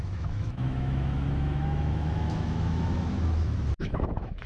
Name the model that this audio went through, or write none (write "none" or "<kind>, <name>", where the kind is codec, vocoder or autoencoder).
autoencoder, DAC-VAE